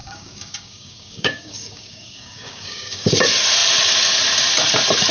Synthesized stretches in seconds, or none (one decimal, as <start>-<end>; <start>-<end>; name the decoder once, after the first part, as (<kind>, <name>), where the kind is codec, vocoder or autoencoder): 0.0-3.1 (codec, DAC)